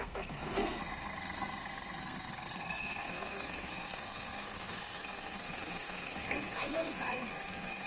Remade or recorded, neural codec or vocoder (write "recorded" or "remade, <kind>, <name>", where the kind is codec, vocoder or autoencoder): remade, codec, SNAC